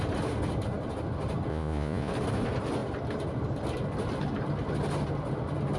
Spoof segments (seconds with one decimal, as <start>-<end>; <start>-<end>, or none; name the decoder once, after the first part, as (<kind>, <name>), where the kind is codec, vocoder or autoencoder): 1.5-2.1 (vocoder, Vocos)